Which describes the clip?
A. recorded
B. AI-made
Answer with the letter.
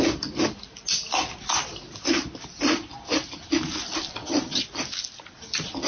A